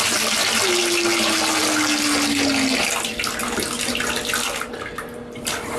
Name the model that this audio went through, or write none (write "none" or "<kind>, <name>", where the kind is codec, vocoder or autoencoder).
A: none